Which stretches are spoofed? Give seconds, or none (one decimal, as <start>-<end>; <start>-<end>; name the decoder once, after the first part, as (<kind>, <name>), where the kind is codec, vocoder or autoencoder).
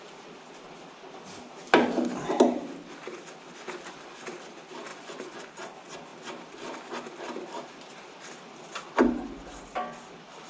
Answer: 4.9-5.5 (vocoder, Vocos)